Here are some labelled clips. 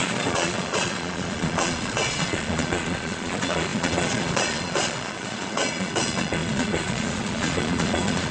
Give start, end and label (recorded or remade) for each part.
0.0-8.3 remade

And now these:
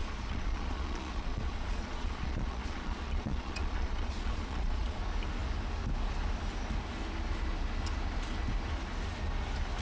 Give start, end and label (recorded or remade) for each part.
0.0-5.0 remade; 5.0-9.8 recorded

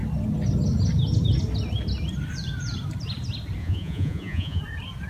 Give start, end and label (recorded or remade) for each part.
0.0-3.6 recorded; 3.6-4.6 remade; 4.6-5.1 recorded